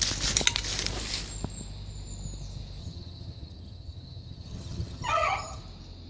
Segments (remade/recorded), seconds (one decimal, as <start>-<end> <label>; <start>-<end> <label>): 0.0-2.8 recorded; 2.8-5.6 remade; 5.6-6.1 recorded